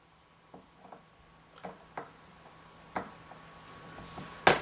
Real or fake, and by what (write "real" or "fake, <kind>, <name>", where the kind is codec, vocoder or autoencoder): real